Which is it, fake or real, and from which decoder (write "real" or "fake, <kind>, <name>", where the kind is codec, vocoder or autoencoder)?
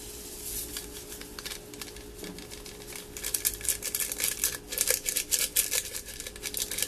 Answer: real